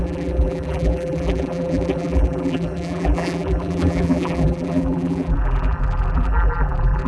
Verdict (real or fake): fake